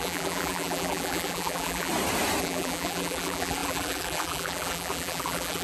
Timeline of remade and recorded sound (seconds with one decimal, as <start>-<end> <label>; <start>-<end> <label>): 0.0-1.9 remade; 1.9-2.4 recorded; 2.4-5.6 remade